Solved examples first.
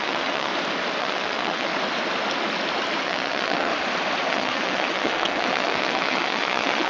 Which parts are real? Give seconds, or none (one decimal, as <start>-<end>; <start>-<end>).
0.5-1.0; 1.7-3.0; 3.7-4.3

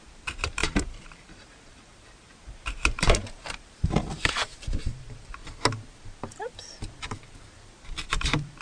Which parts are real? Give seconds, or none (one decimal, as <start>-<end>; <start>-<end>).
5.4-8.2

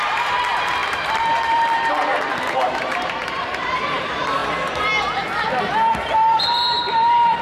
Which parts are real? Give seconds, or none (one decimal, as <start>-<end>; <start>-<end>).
4.4-5.6

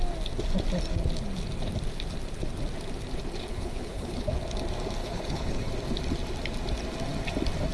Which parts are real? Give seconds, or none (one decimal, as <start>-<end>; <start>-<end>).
0.0-3.5; 4.3-5.0; 5.7-7.7

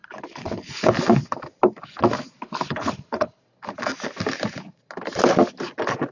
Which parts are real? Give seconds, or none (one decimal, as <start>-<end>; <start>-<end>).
0.9-2.4; 3.4-6.1

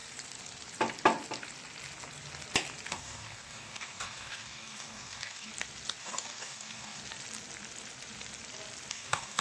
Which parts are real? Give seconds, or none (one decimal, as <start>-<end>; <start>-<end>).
0.0-2.9; 5.5-6.0; 7.0-8.9

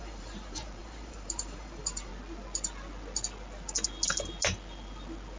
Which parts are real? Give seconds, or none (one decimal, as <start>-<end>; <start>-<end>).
2.1-5.4

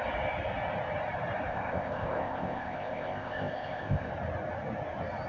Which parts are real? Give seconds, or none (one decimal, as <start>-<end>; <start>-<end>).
0.0-1.5; 4.1-5.3